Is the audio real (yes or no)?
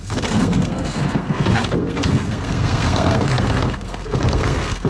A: no